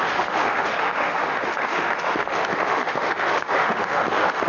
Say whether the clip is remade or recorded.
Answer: remade